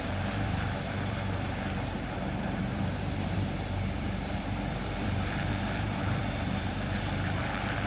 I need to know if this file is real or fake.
fake